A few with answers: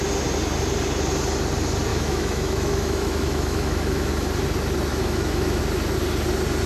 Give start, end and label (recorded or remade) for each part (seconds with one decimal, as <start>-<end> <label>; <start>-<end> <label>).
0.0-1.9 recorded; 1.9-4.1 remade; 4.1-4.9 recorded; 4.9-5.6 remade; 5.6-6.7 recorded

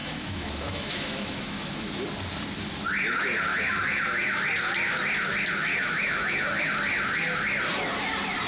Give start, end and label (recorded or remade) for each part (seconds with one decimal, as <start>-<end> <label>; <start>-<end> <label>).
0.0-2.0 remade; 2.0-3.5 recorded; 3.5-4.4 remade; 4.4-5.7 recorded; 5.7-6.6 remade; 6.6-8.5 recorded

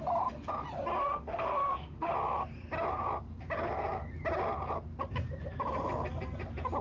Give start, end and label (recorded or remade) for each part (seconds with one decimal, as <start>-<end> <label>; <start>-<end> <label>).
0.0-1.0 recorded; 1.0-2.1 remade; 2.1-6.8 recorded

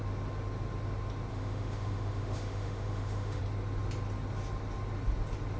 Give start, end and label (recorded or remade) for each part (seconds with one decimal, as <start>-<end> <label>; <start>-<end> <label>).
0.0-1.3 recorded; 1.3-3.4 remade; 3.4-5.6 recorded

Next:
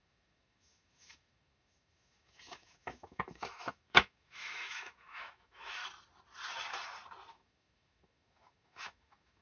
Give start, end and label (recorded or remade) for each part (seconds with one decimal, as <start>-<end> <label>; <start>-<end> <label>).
0.0-5.8 remade; 5.8-7.3 recorded; 7.3-9.4 remade